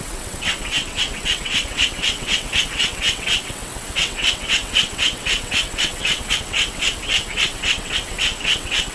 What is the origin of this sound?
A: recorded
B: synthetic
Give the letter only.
B